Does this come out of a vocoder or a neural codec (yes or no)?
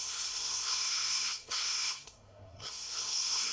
yes